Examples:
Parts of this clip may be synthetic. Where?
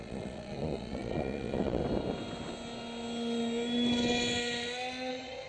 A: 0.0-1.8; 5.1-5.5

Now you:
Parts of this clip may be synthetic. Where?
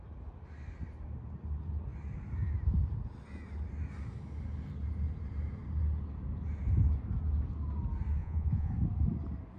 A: 8.2-8.7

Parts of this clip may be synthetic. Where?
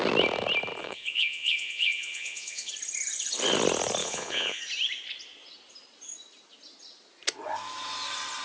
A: 0.8-2.7; 4.0-4.6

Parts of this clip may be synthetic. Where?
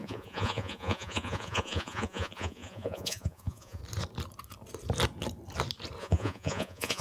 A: 0.0-3.8; 6.0-7.0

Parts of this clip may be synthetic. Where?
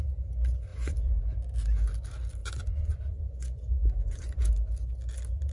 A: 0.7-1.2; 2.4-4.5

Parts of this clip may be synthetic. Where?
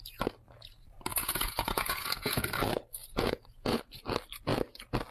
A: 1.1-2.4; 3.0-3.8